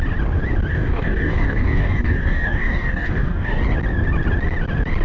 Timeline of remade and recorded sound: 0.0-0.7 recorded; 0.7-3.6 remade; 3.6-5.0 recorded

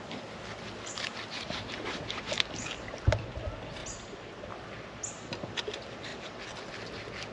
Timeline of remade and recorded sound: 0.0-7.3 recorded